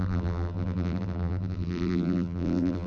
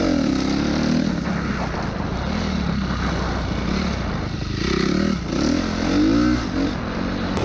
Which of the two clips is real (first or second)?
second